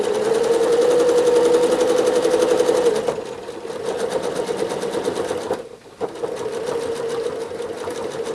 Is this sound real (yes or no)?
yes